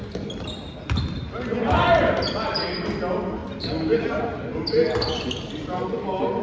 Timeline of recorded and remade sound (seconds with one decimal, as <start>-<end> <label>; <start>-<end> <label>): 0.0-6.4 recorded